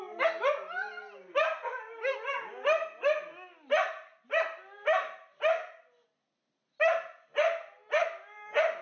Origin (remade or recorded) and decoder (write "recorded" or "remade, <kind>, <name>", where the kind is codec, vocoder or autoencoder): recorded